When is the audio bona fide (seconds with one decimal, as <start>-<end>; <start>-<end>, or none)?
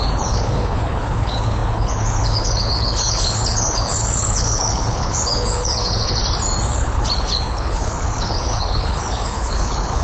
6.2-6.7